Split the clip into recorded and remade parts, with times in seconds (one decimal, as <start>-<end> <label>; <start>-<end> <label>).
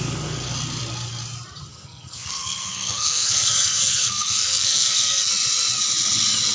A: 0.0-1.7 recorded; 1.7-5.3 remade; 5.3-6.5 recorded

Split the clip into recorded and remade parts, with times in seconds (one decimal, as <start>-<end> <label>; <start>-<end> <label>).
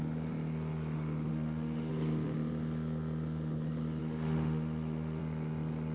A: 0.0-1.3 recorded; 1.3-1.9 remade; 1.9-4.0 recorded; 4.0-5.2 remade; 5.2-5.9 recorded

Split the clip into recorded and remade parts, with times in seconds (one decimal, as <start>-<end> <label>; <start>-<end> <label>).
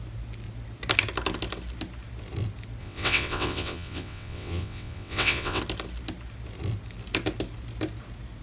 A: 0.0-2.8 recorded; 2.8-5.6 remade; 5.6-8.4 recorded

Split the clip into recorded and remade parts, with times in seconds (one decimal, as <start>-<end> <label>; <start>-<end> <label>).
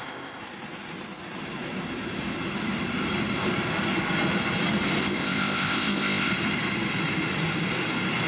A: 0.0-0.4 remade; 0.4-5.0 recorded; 5.0-6.3 remade; 6.3-8.3 recorded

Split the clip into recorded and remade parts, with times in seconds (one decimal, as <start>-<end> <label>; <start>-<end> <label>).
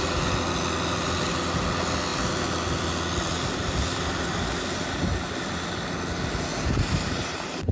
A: 0.0-6.5 recorded; 6.5-7.7 remade